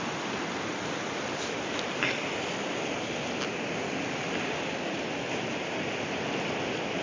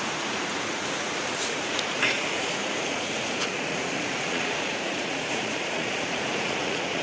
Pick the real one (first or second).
first